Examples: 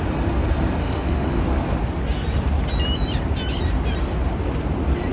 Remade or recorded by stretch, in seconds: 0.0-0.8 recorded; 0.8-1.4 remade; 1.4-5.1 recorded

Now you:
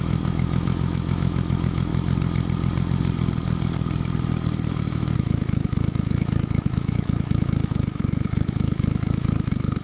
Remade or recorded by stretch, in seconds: 0.0-1.9 remade; 1.9-4.7 recorded; 4.7-9.8 remade